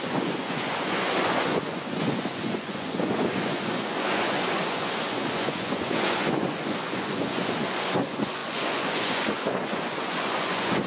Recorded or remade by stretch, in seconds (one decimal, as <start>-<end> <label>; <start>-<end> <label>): 0.0-10.9 remade